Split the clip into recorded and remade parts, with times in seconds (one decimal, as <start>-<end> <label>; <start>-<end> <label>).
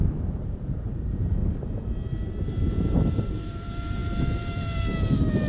0.0-1.4 remade; 1.4-2.5 recorded; 2.5-5.5 remade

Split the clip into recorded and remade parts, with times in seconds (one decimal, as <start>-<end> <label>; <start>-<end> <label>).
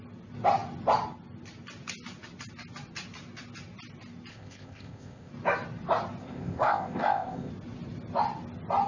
0.0-4.3 recorded; 4.3-5.3 remade; 5.3-6.2 recorded; 6.2-7.5 remade; 7.5-8.9 recorded